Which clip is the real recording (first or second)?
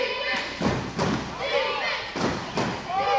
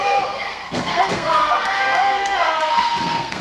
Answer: first